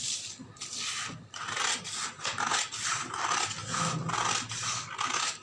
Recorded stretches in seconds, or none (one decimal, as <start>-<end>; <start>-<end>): 0.0-5.4